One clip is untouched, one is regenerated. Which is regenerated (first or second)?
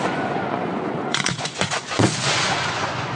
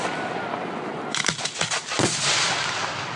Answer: first